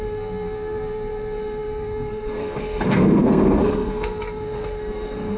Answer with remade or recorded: remade